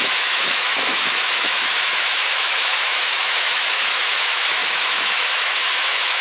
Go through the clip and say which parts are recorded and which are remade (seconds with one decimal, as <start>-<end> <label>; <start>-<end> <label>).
0.0-6.2 remade